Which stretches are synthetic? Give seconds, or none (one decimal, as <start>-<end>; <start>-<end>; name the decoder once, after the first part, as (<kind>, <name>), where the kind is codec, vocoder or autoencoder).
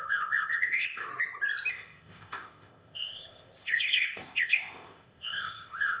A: 0.0-1.1 (codec, ZipCodec); 1.7-6.0